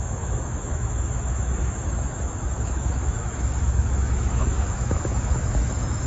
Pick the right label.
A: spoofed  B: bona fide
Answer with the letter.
A